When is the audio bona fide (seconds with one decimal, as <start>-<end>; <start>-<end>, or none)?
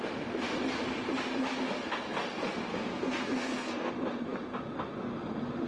0.0-2.7; 3.9-5.7